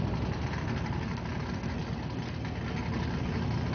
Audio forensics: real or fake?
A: real